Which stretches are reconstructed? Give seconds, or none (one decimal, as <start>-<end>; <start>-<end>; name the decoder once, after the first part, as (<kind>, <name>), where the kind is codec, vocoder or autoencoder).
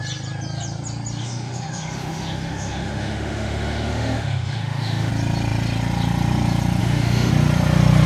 1.2-5.1 (autoencoder, DAC-VAE); 6.8-7.3